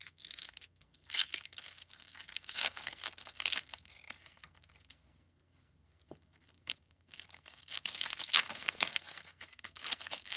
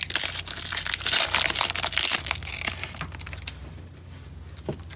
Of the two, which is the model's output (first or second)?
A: first